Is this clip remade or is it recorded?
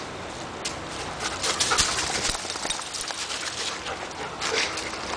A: recorded